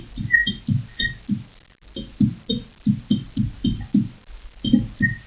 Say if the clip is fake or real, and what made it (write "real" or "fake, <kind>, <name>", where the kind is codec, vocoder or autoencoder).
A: real